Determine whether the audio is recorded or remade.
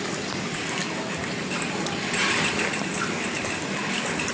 recorded